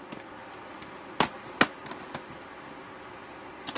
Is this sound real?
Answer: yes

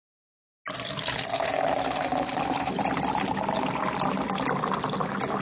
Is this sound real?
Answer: yes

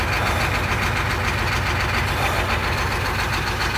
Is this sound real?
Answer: yes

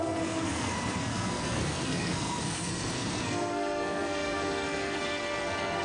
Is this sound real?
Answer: no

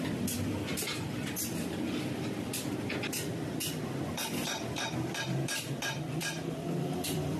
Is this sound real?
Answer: no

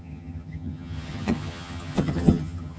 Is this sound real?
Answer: no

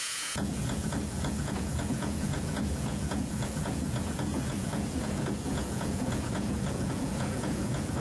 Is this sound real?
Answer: no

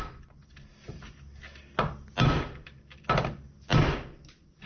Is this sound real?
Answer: yes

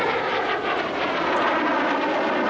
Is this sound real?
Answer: yes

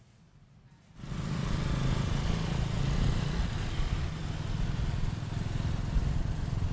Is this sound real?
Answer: yes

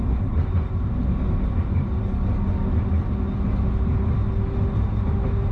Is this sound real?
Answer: yes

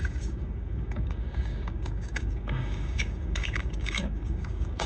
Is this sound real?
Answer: no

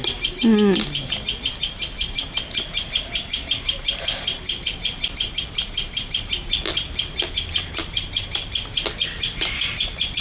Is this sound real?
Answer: yes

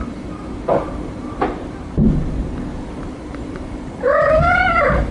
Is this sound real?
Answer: no